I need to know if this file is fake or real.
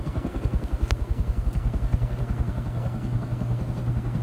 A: fake